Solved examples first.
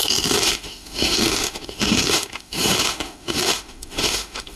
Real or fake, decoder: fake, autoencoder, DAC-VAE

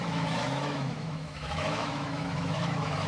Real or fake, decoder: fake, autoencoder, DAC-VAE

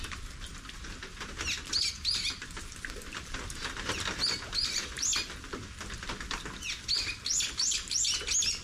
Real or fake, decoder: real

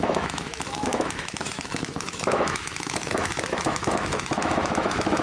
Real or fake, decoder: fake, autoencoder, DAC-VAE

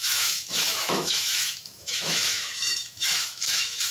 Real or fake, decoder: fake, autoencoder, DAC-VAE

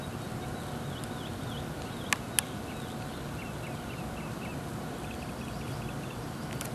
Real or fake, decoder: real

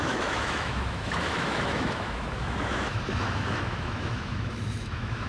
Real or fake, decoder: fake, autoencoder, DAC-VAE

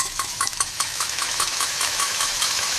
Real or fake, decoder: fake, autoencoder, DAC-VAE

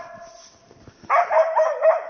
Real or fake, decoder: real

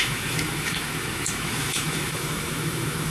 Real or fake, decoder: fake, autoencoder, DAC-VAE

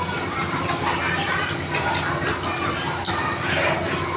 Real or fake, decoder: real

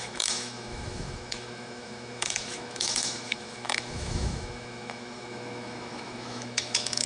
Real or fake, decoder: fake, autoencoder, DAC-VAE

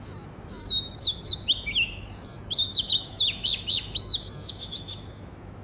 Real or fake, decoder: fake, autoencoder, DAC-VAE